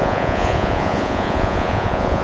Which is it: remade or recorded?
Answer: remade